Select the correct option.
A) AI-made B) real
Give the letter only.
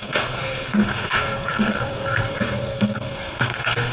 A